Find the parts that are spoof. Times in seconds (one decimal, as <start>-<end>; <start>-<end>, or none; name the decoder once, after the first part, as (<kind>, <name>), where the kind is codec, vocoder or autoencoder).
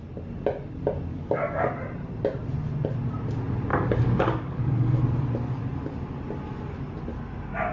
1.1-1.7 (codec, DAC); 3.7-5.0